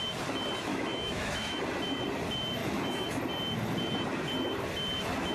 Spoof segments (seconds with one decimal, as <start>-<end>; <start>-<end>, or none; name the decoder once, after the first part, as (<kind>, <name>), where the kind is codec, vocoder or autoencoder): 0.7-1.6 (autoencoder, DAC-VAE); 2.6-3.2